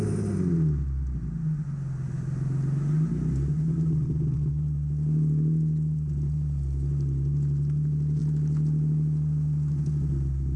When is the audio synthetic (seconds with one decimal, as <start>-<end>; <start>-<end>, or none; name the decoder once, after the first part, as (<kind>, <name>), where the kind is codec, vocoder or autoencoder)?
none